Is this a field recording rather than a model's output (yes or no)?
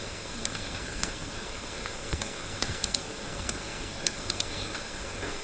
no